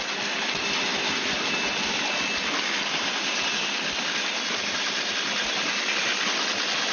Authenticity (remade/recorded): recorded